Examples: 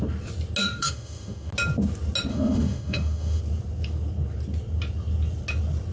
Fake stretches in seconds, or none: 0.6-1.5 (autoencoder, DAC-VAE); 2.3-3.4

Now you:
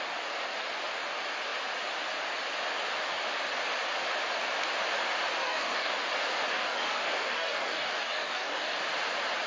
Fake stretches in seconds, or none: 5.4-5.9 (codec, DAC); 6.5-8.8

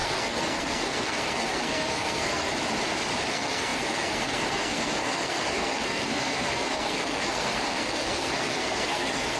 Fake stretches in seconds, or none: 0.0-2.5 (codec, SNAC); 3.3-9.4